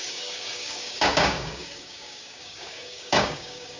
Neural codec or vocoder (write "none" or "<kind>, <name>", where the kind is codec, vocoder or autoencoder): codec, DAC